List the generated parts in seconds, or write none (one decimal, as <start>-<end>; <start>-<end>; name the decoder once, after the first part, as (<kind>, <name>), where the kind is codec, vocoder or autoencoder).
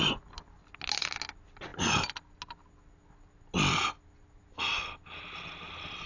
none